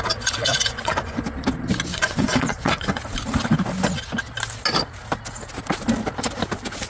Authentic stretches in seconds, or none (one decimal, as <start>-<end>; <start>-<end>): 0.0-0.5; 1.2-1.9; 3.0-6.9